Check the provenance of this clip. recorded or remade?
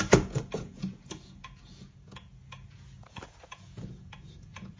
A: remade